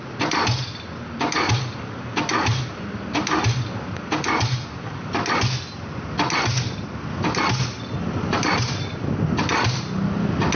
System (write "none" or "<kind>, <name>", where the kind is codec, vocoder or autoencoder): none